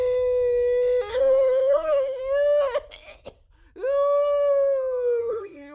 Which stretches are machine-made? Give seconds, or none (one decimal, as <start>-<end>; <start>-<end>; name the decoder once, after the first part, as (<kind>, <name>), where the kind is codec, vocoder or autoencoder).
1.1-2.2 (codec, SNAC); 5.2-5.7